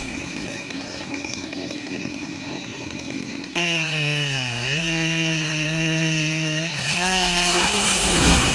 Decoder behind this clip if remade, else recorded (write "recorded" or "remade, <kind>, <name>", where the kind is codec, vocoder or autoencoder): remade, codec, SNAC